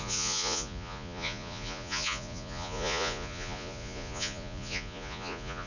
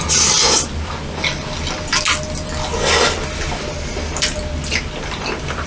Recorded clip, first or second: second